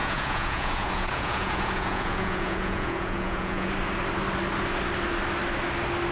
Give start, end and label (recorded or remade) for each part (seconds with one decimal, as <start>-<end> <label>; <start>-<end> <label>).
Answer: 0.0-3.7 remade; 3.7-6.1 recorded